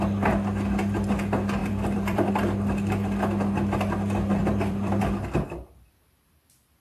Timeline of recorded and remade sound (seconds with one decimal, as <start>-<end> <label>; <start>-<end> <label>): 0.0-1.6 recorded; 1.6-2.3 remade; 2.3-4.4 recorded; 4.4-5.0 remade; 5.0-6.8 recorded

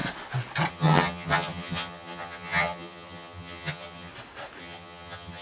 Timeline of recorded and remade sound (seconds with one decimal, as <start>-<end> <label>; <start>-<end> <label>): 0.0-0.7 recorded; 0.7-4.1 remade; 4.1-4.6 recorded; 4.6-5.4 remade

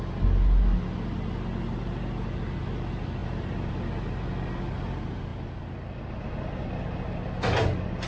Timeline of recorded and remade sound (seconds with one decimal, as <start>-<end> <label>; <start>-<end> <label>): 0.0-8.1 recorded

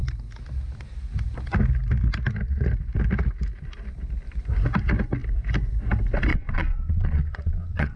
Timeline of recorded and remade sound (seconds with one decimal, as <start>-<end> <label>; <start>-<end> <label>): 0.0-6.3 recorded; 6.3-8.0 remade

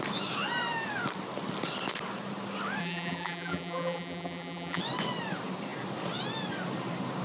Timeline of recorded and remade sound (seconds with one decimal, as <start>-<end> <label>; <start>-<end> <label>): 0.0-2.8 recorded; 2.8-4.8 remade; 4.8-7.2 recorded

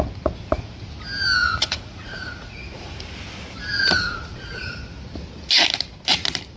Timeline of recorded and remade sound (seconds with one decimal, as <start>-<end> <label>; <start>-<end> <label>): 0.0-1.4 recorded; 1.4-3.0 remade; 3.0-3.7 recorded; 3.7-4.7 remade; 4.7-6.6 recorded